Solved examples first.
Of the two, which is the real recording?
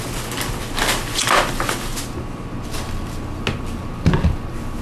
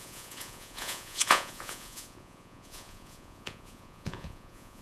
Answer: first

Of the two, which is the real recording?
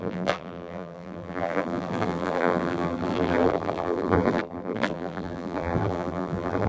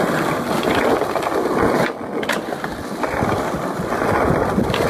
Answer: second